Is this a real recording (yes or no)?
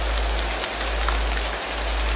yes